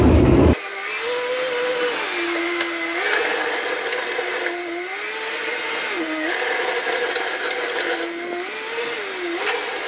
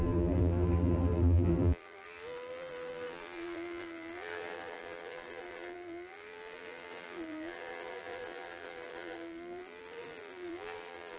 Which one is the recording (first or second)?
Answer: first